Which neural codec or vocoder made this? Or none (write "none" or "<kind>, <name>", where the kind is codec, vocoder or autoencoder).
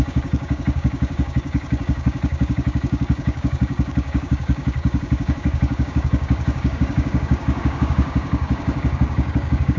codec, DAC